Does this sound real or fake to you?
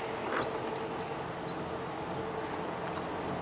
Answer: real